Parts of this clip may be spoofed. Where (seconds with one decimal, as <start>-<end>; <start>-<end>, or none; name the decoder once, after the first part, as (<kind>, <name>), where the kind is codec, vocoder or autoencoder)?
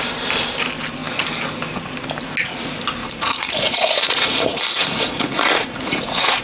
3.0-6.4 (vocoder, Vocos)